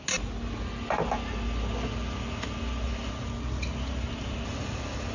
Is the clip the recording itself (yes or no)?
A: yes